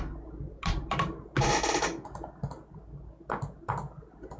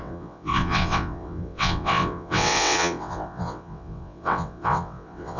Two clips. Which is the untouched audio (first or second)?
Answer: first